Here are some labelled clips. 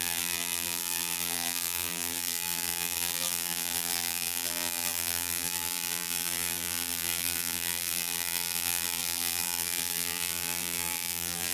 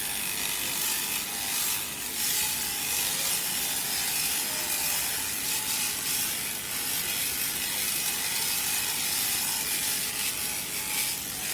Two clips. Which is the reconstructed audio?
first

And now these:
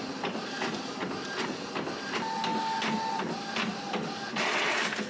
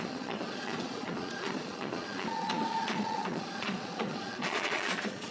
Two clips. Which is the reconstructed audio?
second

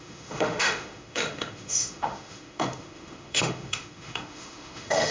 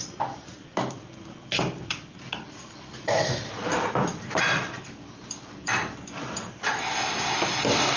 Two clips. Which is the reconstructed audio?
first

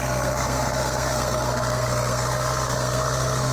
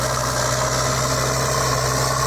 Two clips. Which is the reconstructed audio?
first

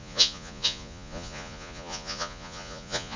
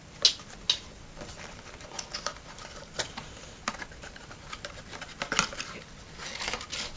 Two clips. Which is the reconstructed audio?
first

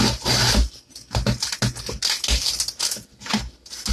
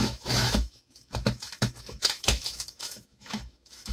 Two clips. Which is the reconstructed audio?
second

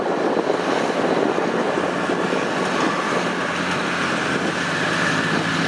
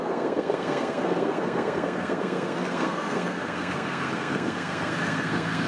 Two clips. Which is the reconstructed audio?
second